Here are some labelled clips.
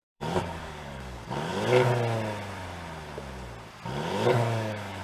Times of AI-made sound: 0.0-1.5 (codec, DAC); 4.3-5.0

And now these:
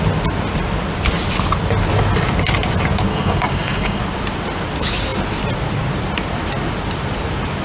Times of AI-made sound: 3.1-4.0 (codec, DAC)

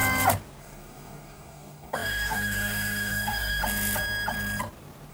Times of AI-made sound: 0.6-3.6 (codec, DAC)

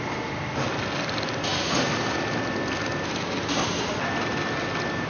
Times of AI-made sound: none